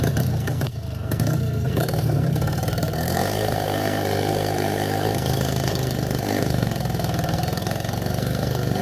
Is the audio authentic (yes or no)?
no